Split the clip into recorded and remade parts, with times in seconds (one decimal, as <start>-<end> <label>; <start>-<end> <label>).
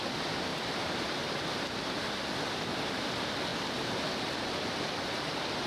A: 0.0-0.5 recorded; 0.5-2.3 remade; 2.3-5.7 recorded